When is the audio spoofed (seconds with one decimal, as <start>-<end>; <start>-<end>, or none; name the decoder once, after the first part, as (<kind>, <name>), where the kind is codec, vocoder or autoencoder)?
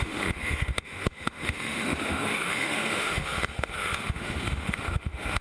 0.0-5.4 (autoencoder, DAC-VAE)